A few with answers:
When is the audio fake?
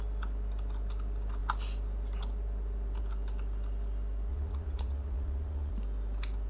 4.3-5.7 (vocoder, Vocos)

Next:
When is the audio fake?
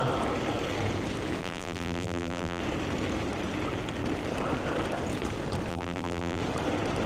1.4-2.6 (vocoder, BigVGAN v2); 5.7-6.4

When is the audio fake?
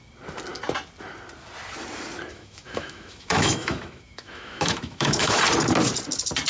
2.3-5.4 (autoencoder, DAC-VAE)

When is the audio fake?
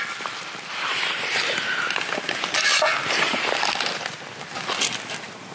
none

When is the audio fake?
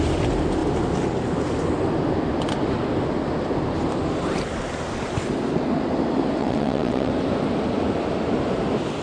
6.4-7.1 (vocoder, WaveNeXt)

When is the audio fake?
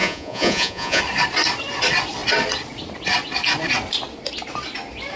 0.0-1.0 (vocoder, Vocos)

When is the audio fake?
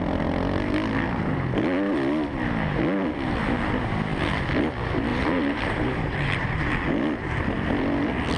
5.1-6.6 (vocoder, BigVGAN v2)